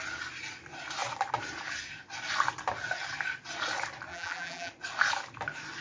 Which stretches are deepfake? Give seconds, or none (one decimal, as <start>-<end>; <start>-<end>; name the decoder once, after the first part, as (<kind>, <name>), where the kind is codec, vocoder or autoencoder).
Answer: 4.1-4.7 (vocoder, BigVGAN v2)